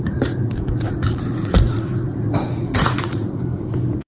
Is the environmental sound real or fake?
fake